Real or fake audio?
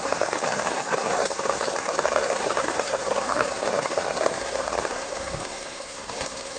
fake